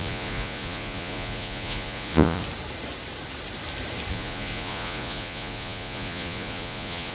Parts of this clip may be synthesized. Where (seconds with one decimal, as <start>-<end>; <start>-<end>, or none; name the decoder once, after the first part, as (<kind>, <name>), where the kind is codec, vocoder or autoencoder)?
0.0-2.4 (vocoder, Vocos); 4.1-7.1